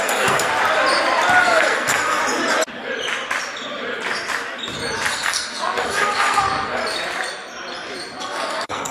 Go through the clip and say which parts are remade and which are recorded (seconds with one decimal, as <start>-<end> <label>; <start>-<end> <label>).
0.0-0.5 remade; 0.5-1.4 recorded; 1.4-2.2 remade; 2.2-5.1 recorded; 5.1-6.8 remade; 6.8-8.2 recorded; 8.2-8.9 remade